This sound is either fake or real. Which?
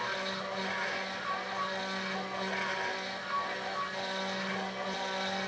real